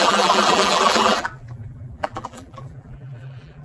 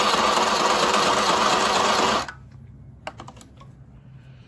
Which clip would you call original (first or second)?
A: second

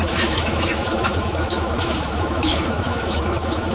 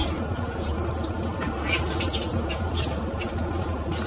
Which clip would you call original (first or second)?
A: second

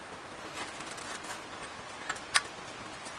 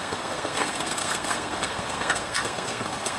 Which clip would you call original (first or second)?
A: first